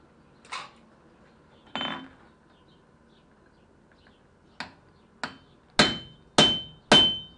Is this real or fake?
real